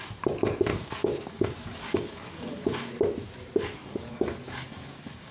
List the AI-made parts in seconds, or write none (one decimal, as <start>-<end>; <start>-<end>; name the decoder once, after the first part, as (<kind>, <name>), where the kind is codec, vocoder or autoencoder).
0.7-3.0 (codec, DAC); 3.8-5.3